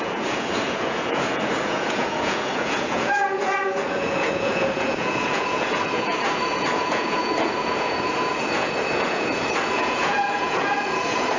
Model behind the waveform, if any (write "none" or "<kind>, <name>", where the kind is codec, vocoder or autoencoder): vocoder, Vocos